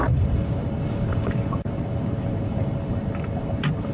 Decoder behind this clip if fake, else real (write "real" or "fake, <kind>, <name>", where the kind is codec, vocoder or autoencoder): fake, vocoder, BigVGAN v2